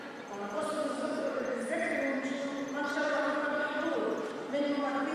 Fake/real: real